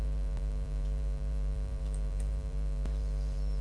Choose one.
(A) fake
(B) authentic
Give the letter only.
A